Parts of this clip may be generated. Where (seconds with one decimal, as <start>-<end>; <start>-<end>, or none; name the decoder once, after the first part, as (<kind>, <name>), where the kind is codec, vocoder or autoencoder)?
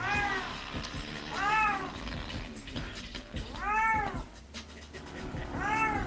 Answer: 2.6-3.1 (vocoder, BigVGAN v2)